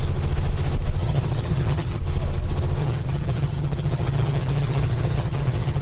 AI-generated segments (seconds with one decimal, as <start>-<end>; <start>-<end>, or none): 1.0-2.0; 2.8-5.8